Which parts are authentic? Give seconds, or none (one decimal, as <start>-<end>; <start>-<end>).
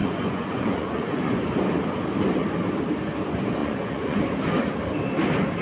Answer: 1.5-3.6; 4.2-5.6